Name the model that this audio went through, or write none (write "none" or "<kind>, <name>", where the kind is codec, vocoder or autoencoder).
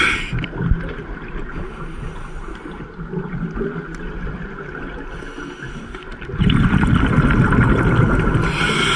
none